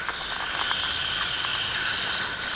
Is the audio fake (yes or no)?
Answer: no